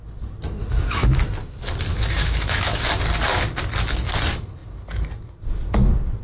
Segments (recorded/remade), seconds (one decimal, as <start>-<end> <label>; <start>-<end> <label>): 0.0-0.6 recorded; 0.6-1.2 remade; 1.2-1.9 recorded; 1.9-2.9 remade; 2.9-6.2 recorded